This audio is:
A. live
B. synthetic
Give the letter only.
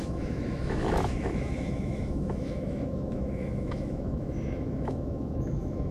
B